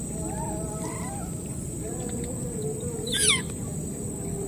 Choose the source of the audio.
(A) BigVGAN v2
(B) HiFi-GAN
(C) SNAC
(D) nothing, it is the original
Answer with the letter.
A